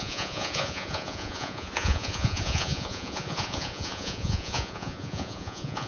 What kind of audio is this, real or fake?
fake